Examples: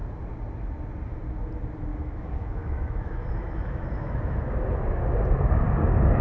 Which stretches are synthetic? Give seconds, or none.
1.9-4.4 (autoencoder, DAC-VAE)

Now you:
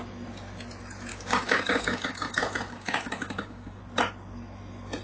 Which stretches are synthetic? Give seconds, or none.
1.1-3.8 (codec, DAC)

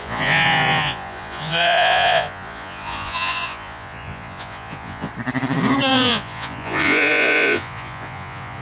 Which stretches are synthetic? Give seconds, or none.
0.0-5.1 (vocoder, Vocos); 5.9-8.6

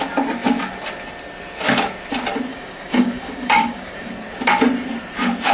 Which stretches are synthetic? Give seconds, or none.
2.5-4.1 (codec, DAC)

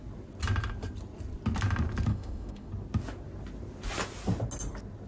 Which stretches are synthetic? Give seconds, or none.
2.1-2.7 (autoencoder, DAC-VAE)